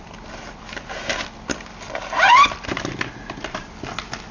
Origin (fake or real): real